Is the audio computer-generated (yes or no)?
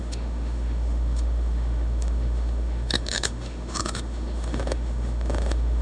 yes